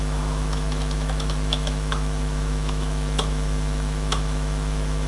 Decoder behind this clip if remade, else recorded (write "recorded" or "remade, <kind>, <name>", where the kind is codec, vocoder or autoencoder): remade, autoencoder, DAC-VAE